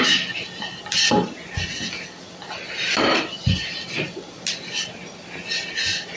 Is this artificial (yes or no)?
no